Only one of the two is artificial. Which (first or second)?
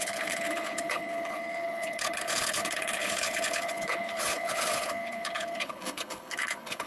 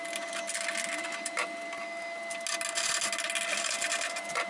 first